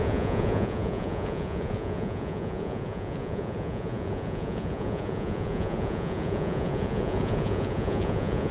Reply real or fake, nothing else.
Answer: fake